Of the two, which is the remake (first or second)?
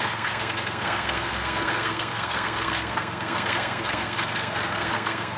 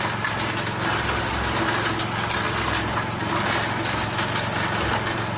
first